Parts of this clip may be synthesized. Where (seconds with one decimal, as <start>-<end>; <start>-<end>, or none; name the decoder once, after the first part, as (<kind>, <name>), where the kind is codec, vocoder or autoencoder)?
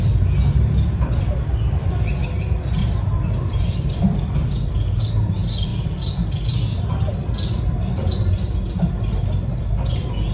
2.8-4.7 (vocoder, BigVGAN v2)